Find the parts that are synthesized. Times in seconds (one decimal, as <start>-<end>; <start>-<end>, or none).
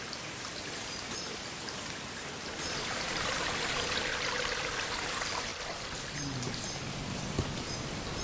none